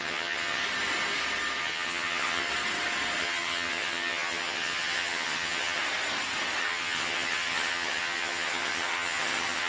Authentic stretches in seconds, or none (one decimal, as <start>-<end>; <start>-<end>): 0.6-1.6; 2.5-3.2; 5.8-6.6